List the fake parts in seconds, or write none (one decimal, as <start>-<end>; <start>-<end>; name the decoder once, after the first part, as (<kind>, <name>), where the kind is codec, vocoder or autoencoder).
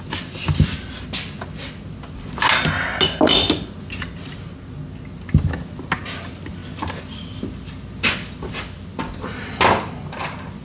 none